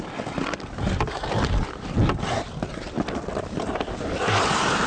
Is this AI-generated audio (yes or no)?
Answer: no